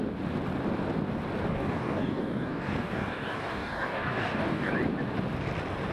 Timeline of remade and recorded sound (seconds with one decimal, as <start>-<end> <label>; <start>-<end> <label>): 0.0-1.5 recorded; 1.5-4.7 remade; 4.7-5.9 recorded